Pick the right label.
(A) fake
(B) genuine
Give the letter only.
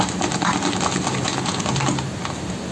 B